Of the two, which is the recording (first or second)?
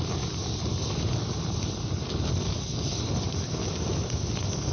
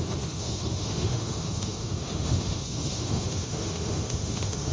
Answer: first